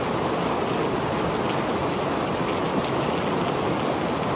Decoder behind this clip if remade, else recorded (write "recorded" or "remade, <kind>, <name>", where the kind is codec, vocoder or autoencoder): recorded